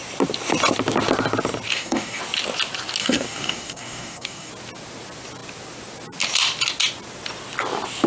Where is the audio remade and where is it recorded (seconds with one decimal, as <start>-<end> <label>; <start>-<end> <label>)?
0.0-1.7 recorded; 1.7-2.2 remade; 2.2-3.0 recorded; 3.0-4.5 remade; 4.5-8.1 recorded

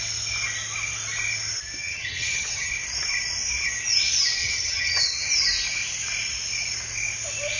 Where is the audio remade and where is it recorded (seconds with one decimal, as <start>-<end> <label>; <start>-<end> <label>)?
0.0-1.8 recorded; 1.8-2.7 remade; 2.7-4.4 recorded; 4.4-5.3 remade; 5.3-7.6 recorded

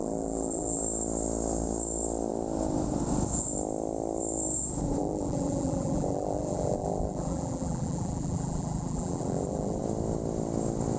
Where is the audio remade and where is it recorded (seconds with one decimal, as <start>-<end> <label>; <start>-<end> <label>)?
0.0-0.8 remade; 0.8-5.0 recorded; 5.0-9.8 remade; 9.8-11.0 recorded